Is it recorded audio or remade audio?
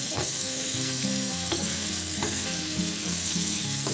remade